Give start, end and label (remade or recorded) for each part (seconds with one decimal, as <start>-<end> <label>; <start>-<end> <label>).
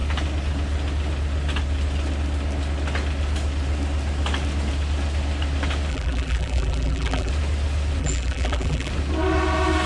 0.0-5.9 recorded; 5.9-7.3 remade; 7.3-8.0 recorded; 8.0-8.9 remade; 8.9-9.9 recorded